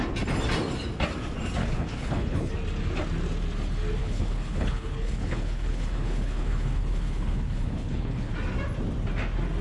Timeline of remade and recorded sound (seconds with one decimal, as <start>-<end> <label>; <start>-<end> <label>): 0.0-1.6 recorded; 1.6-2.5 remade; 2.5-4.0 recorded; 4.0-8.3 remade; 8.3-9.6 recorded

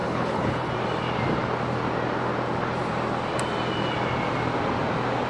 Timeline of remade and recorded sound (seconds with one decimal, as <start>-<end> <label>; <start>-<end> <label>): 0.0-0.7 remade; 0.7-5.3 recorded